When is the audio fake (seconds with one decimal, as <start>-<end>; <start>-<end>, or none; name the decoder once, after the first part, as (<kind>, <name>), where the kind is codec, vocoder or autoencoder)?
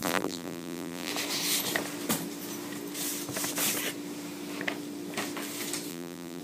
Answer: 0.0-1.1 (vocoder, BigVGAN v2); 5.9-6.4